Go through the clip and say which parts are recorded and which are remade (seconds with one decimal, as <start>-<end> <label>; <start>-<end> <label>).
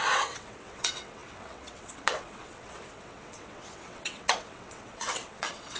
0.0-5.8 remade